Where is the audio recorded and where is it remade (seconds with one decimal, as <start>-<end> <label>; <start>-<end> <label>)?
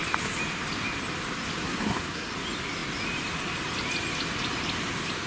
0.0-1.6 recorded; 1.6-2.3 remade; 2.3-5.3 recorded